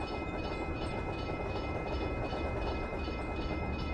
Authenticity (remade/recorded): remade